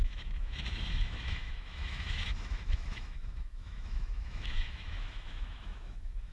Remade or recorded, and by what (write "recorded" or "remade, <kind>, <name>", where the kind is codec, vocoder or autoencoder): remade, autoencoder, DAC-VAE